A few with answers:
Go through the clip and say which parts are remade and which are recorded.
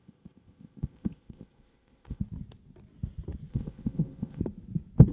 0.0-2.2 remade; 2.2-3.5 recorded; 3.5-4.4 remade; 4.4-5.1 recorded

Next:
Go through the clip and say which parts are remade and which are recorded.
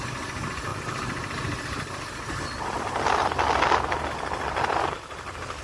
0.0-5.6 recorded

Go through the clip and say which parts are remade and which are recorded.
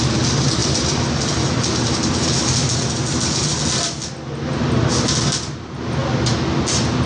0.0-7.1 recorded